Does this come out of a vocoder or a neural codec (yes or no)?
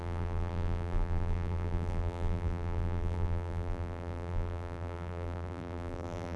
yes